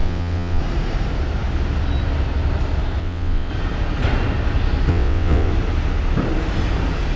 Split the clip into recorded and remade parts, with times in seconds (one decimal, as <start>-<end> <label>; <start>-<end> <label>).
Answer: 0.0-0.6 remade; 0.6-3.0 recorded; 3.0-3.5 remade; 3.5-4.9 recorded; 4.9-5.5 remade; 5.5-7.2 recorded